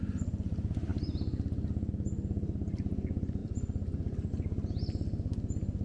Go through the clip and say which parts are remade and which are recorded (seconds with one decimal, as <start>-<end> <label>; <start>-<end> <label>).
0.0-3.4 recorded; 3.4-4.3 remade; 4.3-5.8 recorded

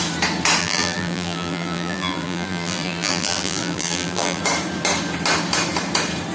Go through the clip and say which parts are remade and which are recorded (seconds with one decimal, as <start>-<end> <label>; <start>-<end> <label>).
0.0-0.6 recorded; 0.6-4.4 remade; 4.4-6.3 recorded

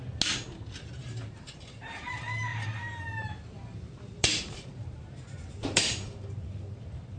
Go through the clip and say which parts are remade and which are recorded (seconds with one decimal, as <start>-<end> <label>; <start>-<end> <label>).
0.0-1.0 recorded; 1.0-2.1 remade; 2.1-2.5 recorded; 2.5-6.8 remade; 6.8-7.2 recorded

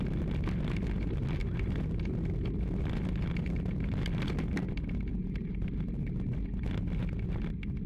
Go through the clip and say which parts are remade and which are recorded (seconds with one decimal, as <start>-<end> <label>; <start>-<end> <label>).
0.0-1.4 recorded; 1.4-2.1 remade; 2.1-5.1 recorded; 5.1-6.4 remade; 6.4-7.9 recorded

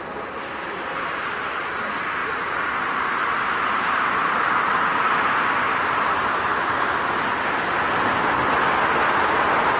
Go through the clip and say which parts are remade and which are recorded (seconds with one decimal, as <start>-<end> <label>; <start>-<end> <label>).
0.0-2.2 recorded; 2.2-7.0 remade; 7.0-9.8 recorded

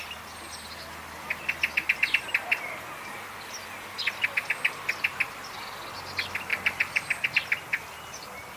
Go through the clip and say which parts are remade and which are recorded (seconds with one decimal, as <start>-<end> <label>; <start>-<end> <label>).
0.0-6.5 recorded; 6.5-7.1 remade; 7.1-8.6 recorded